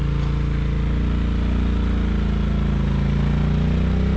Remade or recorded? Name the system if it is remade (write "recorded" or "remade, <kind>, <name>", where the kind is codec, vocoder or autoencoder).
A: recorded